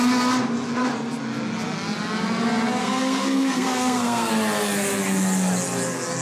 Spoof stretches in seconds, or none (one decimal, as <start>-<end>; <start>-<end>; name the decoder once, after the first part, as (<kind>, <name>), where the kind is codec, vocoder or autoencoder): 2.8-4.3 (codec, SNAC)